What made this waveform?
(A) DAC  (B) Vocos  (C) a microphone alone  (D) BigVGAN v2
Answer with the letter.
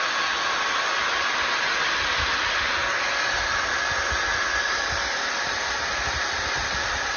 C